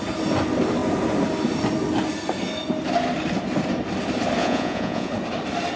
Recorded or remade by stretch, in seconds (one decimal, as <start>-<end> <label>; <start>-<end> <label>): 0.0-4.4 recorded; 4.4-5.1 remade; 5.1-5.8 recorded